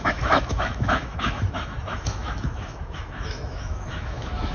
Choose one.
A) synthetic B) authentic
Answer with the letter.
A